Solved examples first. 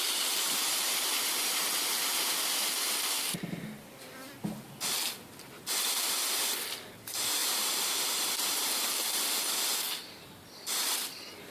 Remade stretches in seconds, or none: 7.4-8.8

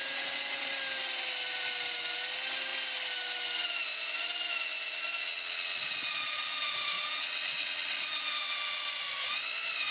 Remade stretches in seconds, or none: 0.0-0.7; 5.2-8.9

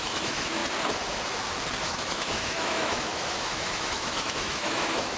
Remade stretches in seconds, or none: 0.0-0.6; 1.8-5.2

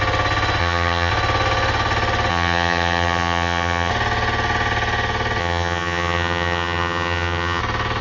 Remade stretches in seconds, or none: 0.6-1.1; 2.3-3.9; 5.4-7.6

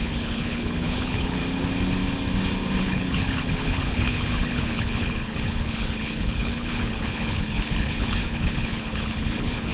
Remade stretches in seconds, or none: 0.0-1.4; 2.8-9.7